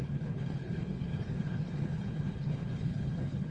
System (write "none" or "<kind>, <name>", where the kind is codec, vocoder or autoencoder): codec, HILCodec